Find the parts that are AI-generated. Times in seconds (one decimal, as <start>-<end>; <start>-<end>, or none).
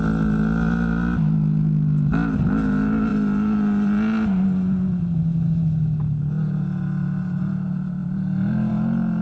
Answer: none